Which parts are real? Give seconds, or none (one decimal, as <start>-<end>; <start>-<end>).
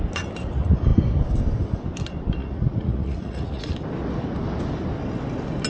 0.0-2.4; 3.7-5.7